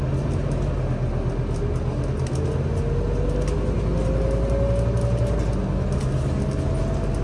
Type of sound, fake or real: real